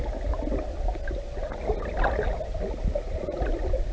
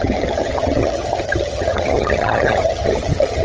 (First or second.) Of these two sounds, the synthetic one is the second